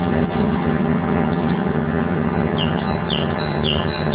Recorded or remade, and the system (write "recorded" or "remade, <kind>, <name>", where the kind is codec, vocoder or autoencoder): remade, vocoder, HiFi-GAN